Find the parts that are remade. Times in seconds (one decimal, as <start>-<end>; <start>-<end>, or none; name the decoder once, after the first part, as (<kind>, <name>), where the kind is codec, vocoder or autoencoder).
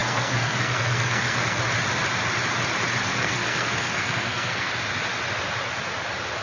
0.0-1.6 (codec, SNAC); 3.1-4.7